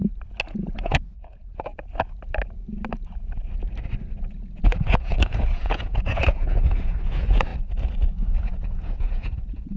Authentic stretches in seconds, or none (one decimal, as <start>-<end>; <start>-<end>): 0.0-0.5; 1.7-4.3; 7.5-8.5